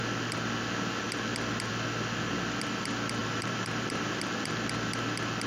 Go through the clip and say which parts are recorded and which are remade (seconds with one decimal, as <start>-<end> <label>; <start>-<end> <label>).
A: 0.0-3.2 recorded; 3.2-4.2 remade; 4.2-5.5 recorded